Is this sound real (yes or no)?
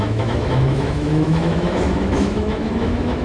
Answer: no